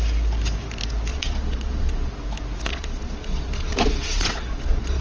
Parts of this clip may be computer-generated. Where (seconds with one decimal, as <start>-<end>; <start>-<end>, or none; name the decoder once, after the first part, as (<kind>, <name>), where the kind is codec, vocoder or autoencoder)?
1.1-2.1 (vocoder, Vocos); 2.7-5.0